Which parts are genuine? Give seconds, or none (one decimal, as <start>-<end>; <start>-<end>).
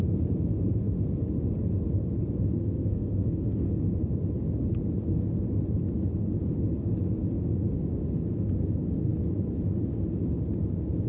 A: 0.0-2.6; 3.7-11.1